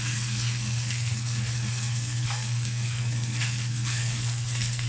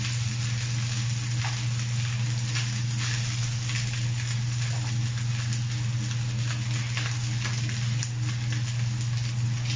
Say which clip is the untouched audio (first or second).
second